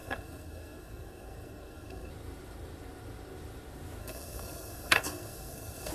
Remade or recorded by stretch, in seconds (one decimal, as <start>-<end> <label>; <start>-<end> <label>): 0.0-2.1 remade; 2.1-4.0 recorded; 4.0-5.9 remade